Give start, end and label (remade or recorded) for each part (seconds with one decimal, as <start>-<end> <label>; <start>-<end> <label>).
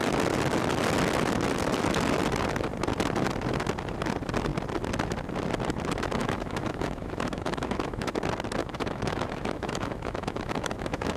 0.0-6.2 recorded; 6.2-8.1 remade; 8.1-8.6 recorded; 8.6-11.2 remade